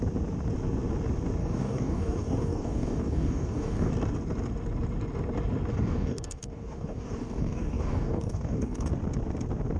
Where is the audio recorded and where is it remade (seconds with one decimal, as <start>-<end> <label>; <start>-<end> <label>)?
0.0-1.4 recorded; 1.4-3.9 remade; 3.9-5.7 recorded; 5.7-8.9 remade; 8.9-9.8 recorded

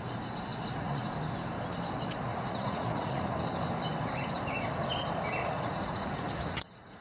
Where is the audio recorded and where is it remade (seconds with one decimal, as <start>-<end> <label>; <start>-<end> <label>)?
0.0-0.5 recorded; 0.5-1.1 remade; 1.1-2.3 recorded; 2.3-3.2 remade; 3.2-5.4 recorded; 5.4-7.0 remade

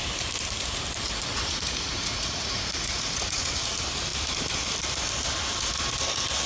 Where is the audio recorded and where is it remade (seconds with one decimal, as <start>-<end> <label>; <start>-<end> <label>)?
0.0-1.3 recorded; 1.3-3.5 remade; 3.5-6.5 recorded

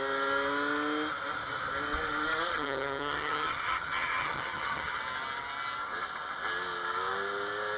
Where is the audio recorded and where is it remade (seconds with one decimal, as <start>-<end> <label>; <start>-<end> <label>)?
0.0-2.5 recorded; 2.5-5.0 remade; 5.0-7.8 recorded

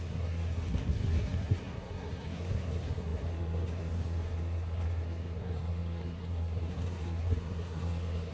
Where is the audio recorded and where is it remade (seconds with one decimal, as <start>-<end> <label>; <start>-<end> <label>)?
0.0-8.3 remade

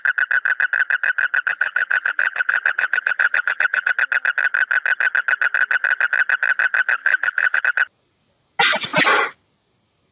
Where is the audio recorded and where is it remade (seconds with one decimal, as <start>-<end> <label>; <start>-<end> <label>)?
0.0-1.5 recorded; 1.5-3.9 remade; 3.9-7.0 recorded; 7.0-7.6 remade; 7.6-10.1 recorded

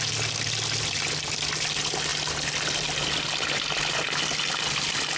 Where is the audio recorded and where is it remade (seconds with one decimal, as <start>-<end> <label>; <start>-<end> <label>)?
0.0-5.2 recorded